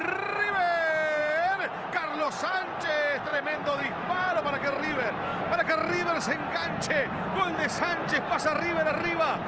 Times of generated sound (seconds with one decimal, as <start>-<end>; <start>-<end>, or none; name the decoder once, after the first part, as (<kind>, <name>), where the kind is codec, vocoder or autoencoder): 1.2-2.9 (vocoder, BigVGAN v2); 3.3-4.4